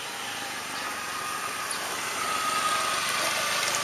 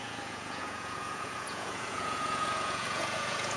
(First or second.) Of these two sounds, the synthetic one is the second